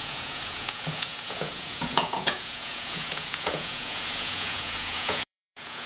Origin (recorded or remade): remade